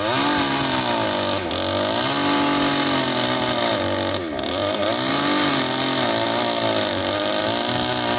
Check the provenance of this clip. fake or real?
real